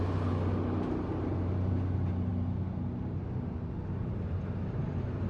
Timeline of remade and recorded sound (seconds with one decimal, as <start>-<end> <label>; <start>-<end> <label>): 0.0-5.3 recorded